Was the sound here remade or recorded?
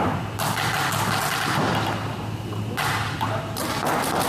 recorded